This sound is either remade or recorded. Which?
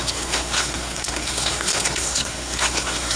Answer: remade